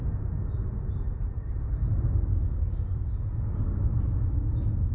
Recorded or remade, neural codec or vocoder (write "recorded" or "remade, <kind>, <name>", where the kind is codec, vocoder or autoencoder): recorded